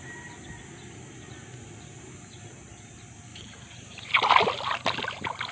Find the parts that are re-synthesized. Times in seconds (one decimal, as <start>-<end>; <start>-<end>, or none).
3.3-4.1